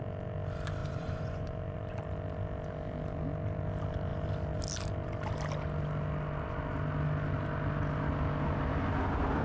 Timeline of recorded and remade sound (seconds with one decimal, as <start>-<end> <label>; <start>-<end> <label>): 0.0-0.8 recorded; 0.8-2.0 remade; 2.0-9.4 recorded